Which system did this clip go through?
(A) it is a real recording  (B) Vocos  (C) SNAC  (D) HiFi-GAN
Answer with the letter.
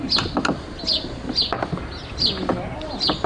A